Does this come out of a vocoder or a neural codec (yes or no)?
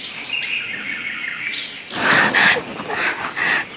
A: no